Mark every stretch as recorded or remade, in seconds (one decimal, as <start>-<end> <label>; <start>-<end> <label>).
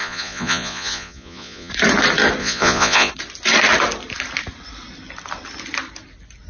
0.0-1.7 remade; 1.7-2.4 recorded; 2.4-3.1 remade; 3.1-6.5 recorded